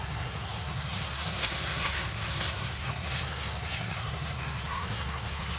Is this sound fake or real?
fake